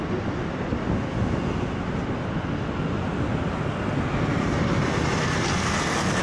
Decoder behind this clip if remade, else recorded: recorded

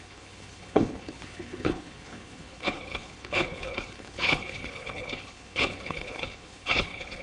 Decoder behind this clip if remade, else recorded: remade, codec, HILCodec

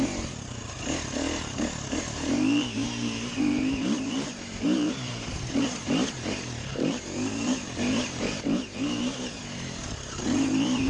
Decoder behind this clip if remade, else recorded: remade, vocoder, BigVGAN v2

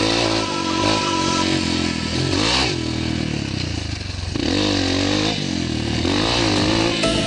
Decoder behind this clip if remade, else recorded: recorded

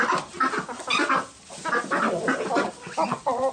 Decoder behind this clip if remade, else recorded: recorded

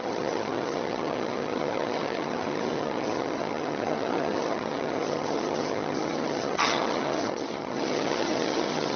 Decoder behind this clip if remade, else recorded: remade, vocoder, HiFi-GAN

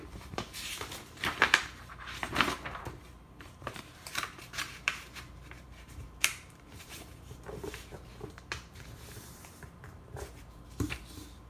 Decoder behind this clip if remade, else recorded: remade, vocoder, BigVGAN v2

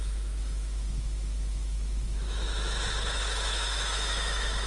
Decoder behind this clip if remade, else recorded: remade, autoencoder, DAC-VAE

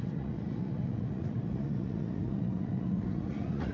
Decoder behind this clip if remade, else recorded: remade, vocoder, Vocos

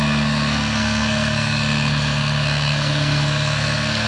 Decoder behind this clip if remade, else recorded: remade, codec, SNAC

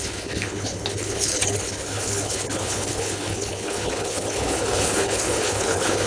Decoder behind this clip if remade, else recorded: remade, codec, HILCodec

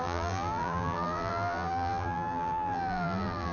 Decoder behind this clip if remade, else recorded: remade, vocoder, BigVGAN v2